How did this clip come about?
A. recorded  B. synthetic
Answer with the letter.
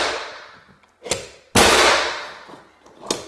A